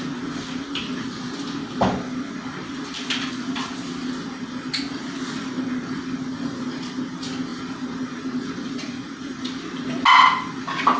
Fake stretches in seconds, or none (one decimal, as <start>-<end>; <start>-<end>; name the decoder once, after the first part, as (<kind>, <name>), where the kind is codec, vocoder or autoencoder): none